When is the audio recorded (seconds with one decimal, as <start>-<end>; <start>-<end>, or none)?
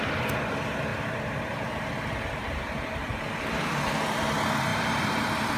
0.0-0.9; 3.5-4.7